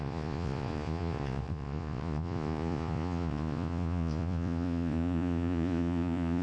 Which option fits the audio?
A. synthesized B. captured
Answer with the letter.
A